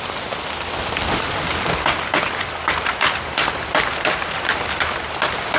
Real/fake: real